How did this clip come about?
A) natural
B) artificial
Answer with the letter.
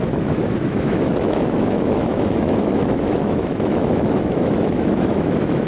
B